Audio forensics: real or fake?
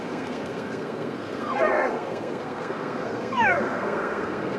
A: fake